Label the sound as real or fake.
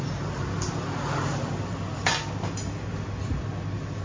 real